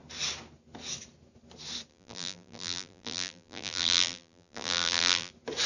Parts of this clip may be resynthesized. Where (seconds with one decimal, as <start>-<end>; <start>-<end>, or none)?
1.9-5.3